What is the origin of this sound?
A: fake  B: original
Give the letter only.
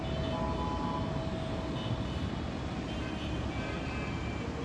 B